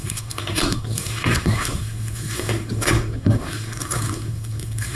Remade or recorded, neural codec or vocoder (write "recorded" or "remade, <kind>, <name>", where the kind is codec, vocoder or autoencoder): remade, codec, SNAC